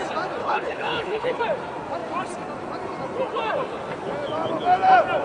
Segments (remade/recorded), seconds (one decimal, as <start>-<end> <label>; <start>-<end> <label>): 0.0-0.4 recorded; 0.4-1.4 remade; 1.4-5.2 recorded